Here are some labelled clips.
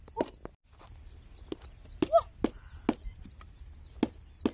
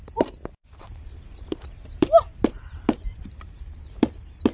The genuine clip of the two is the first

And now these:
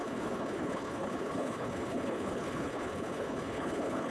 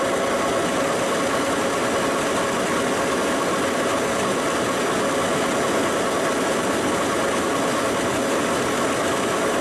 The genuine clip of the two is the second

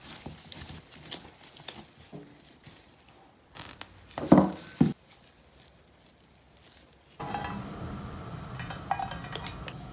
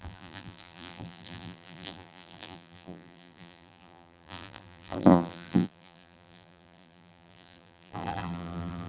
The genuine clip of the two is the first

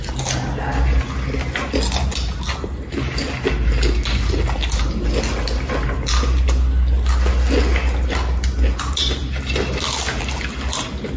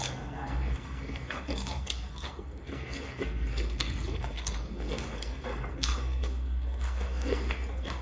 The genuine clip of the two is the first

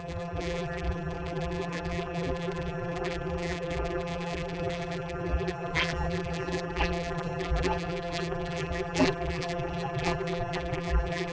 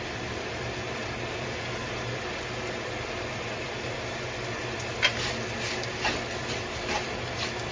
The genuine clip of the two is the second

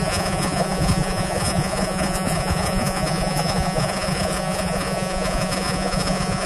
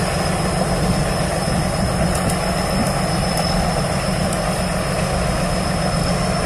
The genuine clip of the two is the second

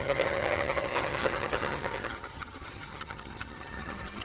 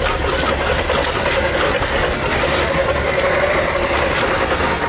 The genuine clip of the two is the second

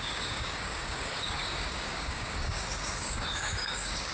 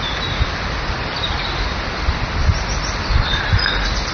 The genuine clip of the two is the second